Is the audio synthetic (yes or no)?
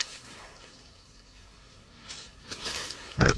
yes